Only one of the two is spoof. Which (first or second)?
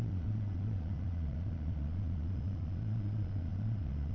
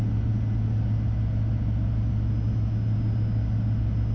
first